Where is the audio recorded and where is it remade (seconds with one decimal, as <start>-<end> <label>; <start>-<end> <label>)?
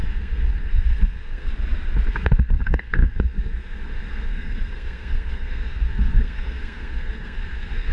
0.0-1.5 remade; 1.5-2.1 recorded; 2.1-7.9 remade